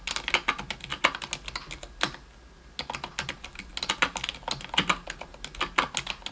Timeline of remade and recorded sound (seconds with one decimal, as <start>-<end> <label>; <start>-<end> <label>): 0.0-6.3 recorded